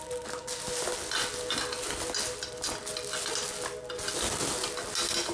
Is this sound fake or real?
real